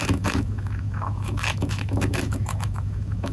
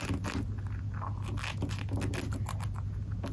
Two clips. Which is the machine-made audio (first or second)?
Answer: first